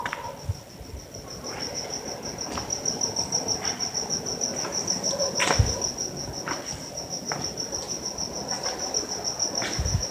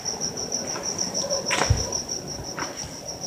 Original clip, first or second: first